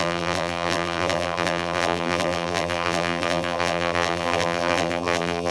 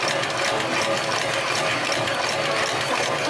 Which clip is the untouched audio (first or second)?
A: second